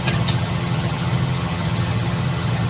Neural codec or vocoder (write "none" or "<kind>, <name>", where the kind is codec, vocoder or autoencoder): vocoder, HiFi-GAN